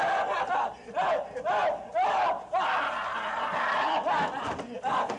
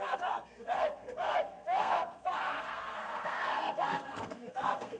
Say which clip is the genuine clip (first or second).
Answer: first